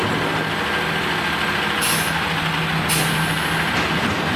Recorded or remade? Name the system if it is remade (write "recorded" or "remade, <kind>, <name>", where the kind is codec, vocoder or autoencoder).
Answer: recorded